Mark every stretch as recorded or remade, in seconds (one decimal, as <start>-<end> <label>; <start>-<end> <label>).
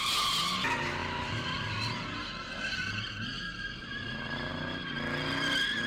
0.0-5.9 recorded